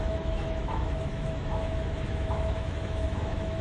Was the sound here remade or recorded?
remade